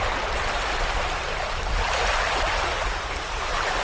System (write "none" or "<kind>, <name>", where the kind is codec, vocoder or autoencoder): none